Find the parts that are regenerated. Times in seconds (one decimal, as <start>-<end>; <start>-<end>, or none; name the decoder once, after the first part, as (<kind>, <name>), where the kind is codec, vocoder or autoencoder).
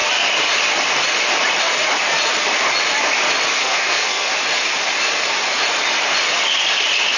3.6-4.3 (codec, SNAC)